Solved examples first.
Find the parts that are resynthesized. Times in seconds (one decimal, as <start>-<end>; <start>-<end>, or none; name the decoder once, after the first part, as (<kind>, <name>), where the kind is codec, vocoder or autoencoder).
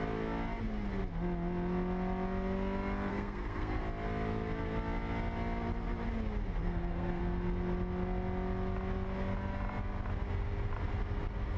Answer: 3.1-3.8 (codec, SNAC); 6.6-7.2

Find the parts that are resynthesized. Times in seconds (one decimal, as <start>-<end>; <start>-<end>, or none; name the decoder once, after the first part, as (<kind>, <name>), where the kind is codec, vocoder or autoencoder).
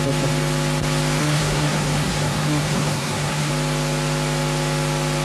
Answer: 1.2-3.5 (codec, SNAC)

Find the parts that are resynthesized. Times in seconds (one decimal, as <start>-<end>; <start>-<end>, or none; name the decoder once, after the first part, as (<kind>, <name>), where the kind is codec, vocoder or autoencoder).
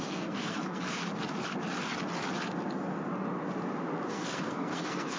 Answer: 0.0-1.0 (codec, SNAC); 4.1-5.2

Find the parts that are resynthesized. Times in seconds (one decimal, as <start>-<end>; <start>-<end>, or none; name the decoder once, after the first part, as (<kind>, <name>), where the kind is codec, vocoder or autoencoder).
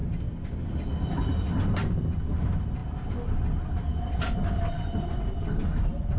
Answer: none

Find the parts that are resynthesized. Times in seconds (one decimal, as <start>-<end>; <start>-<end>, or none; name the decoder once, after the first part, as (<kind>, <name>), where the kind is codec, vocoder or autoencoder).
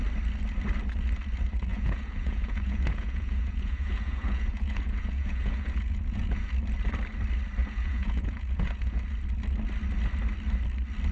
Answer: 1.7-6.5 (vocoder, Vocos); 7.6-9.0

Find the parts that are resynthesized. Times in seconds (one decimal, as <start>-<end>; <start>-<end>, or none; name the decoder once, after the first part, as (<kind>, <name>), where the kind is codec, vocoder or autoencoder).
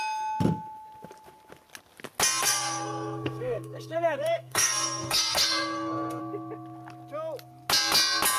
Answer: 2.4-6.2 (codec, SNAC)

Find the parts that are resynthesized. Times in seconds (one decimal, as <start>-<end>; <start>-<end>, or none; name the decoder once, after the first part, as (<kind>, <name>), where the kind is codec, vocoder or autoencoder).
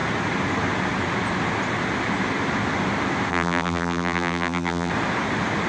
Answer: 3.3-4.9 (vocoder, BigVGAN v2)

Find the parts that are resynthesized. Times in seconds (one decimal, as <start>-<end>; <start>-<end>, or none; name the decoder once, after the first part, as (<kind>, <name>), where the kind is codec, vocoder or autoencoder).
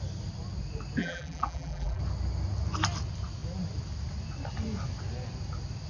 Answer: 1.0-2.0 (vocoder, BigVGAN v2)